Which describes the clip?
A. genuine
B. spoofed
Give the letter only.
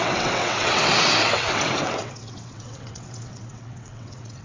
B